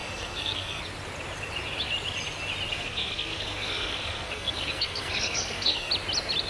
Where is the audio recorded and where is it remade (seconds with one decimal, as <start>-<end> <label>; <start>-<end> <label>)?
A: 0.0-0.8 remade; 0.8-2.7 recorded; 2.7-5.9 remade; 5.9-6.5 recorded